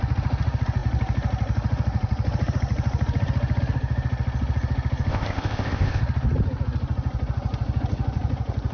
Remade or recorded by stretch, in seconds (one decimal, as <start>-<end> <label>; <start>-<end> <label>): 0.0-5.1 recorded; 5.1-6.0 remade; 6.0-8.7 recorded